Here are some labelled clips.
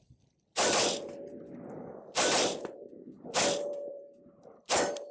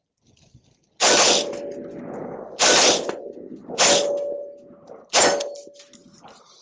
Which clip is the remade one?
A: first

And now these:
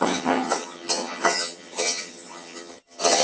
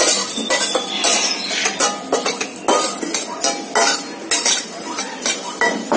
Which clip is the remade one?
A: first